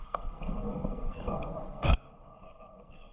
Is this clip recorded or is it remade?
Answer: remade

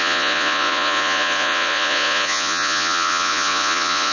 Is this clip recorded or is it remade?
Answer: remade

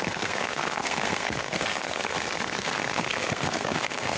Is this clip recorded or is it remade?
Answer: remade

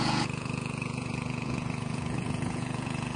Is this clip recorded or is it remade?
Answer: remade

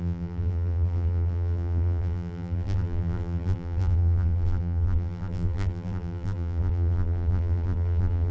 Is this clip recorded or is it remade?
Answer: remade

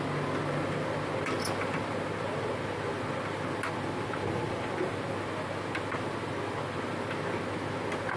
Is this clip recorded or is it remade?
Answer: recorded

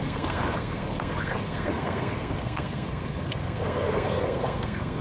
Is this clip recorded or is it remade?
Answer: remade